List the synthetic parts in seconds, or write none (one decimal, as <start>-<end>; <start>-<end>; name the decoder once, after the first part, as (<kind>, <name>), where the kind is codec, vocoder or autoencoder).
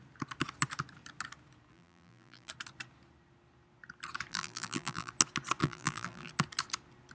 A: 1.7-2.5 (vocoder, BigVGAN v2); 4.3-5.1; 5.6-6.3